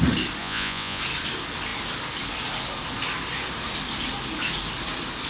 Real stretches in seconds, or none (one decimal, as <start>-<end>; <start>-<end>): 0.0-0.4; 1.0-5.3